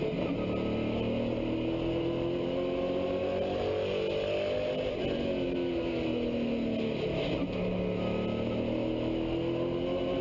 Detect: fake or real real